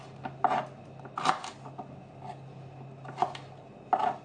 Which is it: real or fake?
real